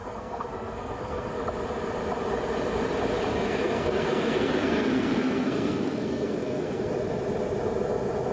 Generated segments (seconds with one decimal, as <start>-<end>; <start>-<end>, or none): 0.0-1.3; 3.3-6.9